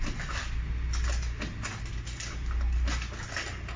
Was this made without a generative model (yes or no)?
yes